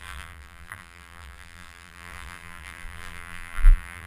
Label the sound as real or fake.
fake